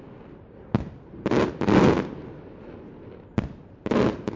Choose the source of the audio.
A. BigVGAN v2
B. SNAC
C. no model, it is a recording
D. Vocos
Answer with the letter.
C